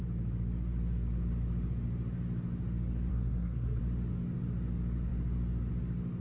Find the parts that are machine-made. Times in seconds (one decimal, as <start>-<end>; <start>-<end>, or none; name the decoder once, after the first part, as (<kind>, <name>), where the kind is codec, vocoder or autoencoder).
3.1-3.8 (codec, SNAC)